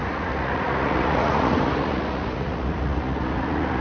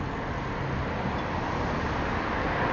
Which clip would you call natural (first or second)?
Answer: second